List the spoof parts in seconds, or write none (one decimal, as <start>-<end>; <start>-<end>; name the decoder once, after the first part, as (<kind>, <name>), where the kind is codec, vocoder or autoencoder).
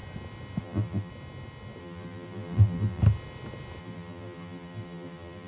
0.6-1.1 (vocoder, BigVGAN v2); 1.8-3.0; 3.8-5.5